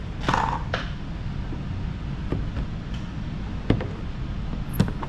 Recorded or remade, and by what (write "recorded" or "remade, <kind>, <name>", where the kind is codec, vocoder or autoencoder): recorded